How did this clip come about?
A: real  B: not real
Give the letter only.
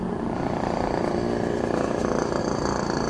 A